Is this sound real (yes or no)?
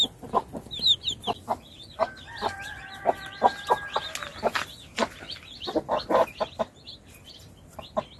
yes